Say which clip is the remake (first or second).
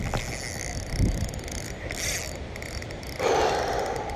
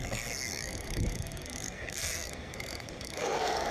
second